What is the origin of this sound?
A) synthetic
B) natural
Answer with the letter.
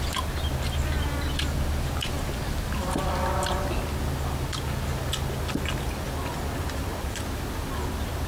B